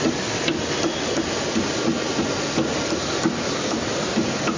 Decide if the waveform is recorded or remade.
recorded